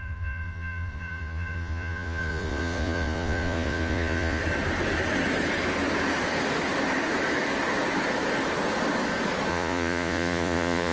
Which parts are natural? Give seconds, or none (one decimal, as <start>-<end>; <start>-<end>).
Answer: 4.4-9.5